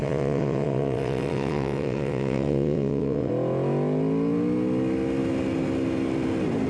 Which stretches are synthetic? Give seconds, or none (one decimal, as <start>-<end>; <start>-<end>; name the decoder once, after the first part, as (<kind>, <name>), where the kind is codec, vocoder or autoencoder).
0.0-3.3 (vocoder, WaveNeXt)